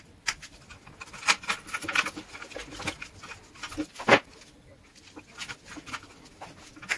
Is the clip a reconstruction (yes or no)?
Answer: no